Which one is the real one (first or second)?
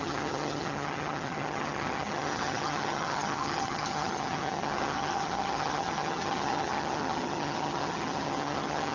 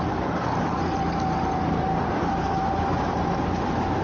second